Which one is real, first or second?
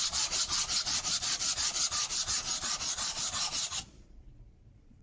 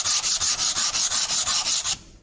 second